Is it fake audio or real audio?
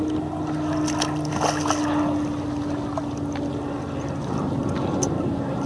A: real